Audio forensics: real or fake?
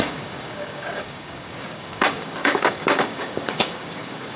fake